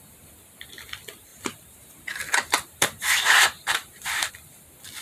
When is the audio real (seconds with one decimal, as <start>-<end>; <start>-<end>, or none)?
0.0-1.3; 4.3-5.0